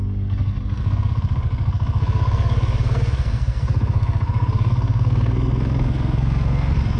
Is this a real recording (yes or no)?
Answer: no